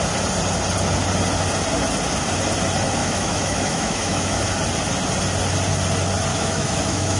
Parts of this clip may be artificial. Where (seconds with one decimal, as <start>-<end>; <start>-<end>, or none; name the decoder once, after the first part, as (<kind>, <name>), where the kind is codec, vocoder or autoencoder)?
3.0-4.4 (autoencoder, DAC-VAE); 6.3-7.2